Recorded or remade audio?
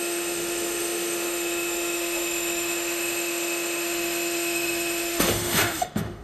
remade